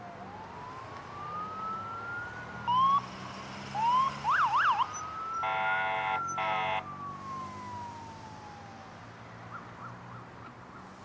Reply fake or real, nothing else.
real